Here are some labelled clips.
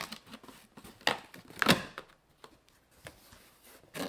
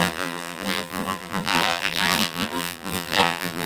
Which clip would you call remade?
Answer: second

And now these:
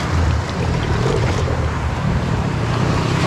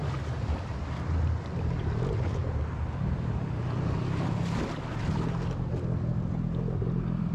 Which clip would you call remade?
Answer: first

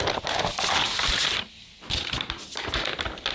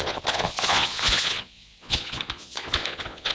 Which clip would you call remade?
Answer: second